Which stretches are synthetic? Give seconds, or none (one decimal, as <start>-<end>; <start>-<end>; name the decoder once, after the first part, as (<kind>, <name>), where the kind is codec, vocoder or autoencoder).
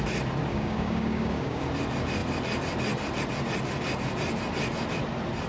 0.5-1.6 (codec, DAC)